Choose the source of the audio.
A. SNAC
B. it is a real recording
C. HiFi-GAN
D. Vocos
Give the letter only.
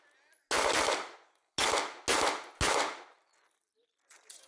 B